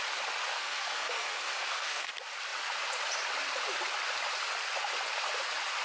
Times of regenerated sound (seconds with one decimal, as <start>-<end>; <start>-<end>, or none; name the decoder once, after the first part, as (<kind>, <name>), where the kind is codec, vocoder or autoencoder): 0.5-2.1 (codec, SNAC)